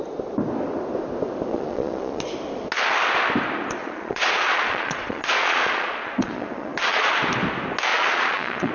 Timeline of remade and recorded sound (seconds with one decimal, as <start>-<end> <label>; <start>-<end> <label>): 0.0-1.5 recorded; 1.5-2.2 remade; 2.2-3.8 recorded; 3.8-7.1 remade; 7.1-7.9 recorded; 7.9-8.7 remade